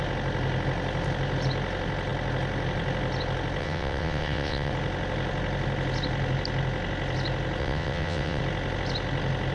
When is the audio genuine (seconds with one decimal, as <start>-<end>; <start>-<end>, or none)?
0.0-3.6; 4.7-7.6; 8.4-9.5